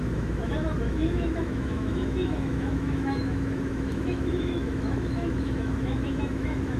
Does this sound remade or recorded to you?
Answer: remade